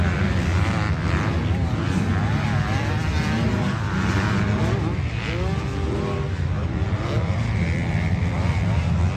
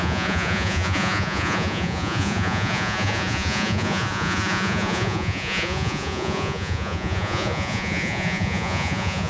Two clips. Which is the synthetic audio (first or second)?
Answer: second